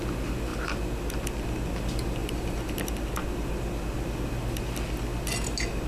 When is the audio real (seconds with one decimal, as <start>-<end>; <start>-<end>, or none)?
0.0-2.2; 2.8-5.9